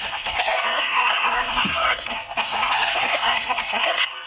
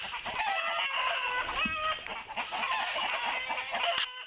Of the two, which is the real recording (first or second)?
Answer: second